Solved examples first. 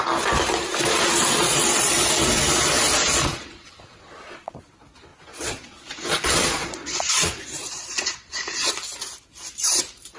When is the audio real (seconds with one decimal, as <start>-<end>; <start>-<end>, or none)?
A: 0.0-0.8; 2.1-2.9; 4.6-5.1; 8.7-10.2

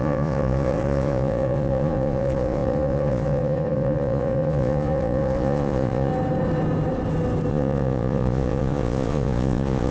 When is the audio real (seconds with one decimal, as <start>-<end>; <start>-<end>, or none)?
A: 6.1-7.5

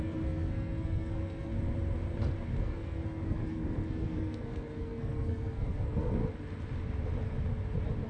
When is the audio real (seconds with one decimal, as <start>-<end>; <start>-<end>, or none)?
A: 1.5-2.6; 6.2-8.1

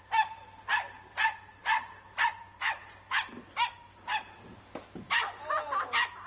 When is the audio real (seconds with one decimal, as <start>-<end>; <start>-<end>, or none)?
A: 0.0-6.3